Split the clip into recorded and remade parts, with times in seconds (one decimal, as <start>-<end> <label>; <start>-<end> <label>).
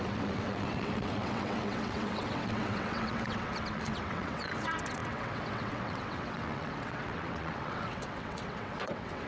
0.0-9.3 remade